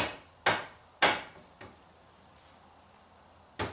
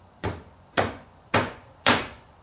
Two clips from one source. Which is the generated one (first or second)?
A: second